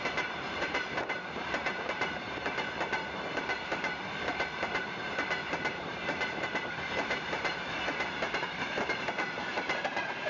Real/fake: fake